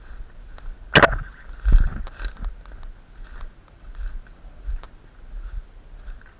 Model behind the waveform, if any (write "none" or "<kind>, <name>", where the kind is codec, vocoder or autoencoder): none